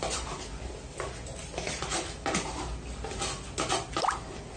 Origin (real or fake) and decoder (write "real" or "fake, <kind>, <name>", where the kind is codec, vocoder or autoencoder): real